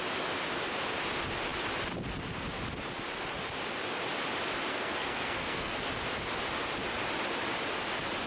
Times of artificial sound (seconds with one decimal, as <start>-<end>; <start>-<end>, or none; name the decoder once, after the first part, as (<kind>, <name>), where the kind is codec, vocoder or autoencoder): 4.7-5.8 (codec, SNAC)